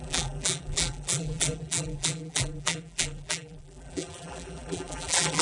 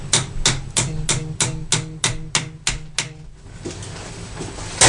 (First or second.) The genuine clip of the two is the second